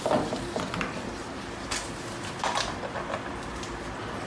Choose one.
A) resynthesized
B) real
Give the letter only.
B